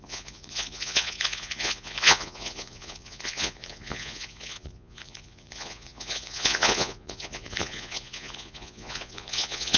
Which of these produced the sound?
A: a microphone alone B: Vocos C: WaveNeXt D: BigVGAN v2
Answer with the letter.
B